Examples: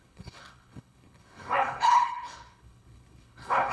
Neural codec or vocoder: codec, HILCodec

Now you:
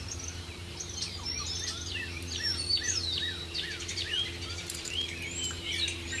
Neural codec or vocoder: vocoder, BigVGAN v2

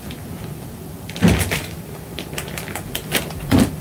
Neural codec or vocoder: vocoder, BigVGAN v2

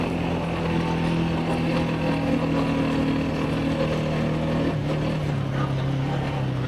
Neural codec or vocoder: none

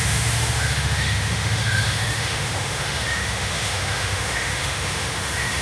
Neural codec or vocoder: autoencoder, DAC-VAE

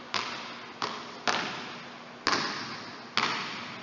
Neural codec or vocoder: none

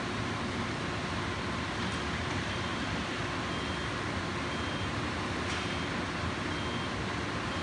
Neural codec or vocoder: none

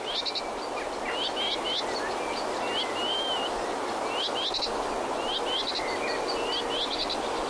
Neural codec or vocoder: none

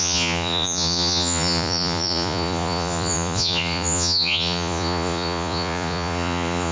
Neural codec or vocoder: vocoder, Vocos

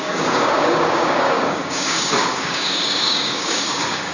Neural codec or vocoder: codec, DAC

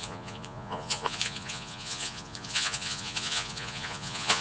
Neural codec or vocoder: vocoder, Vocos